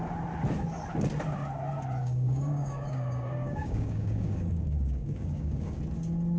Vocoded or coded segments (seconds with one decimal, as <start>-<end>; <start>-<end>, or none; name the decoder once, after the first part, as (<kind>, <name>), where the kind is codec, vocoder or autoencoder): 2.0-5.8 (codec, DAC)